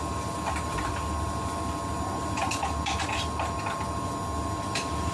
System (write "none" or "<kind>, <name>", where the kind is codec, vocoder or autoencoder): none